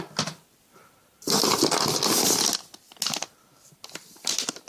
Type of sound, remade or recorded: recorded